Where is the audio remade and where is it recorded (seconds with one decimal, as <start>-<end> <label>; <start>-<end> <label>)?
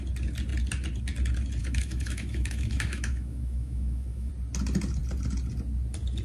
0.0-1.6 recorded; 1.6-4.3 remade; 4.3-6.2 recorded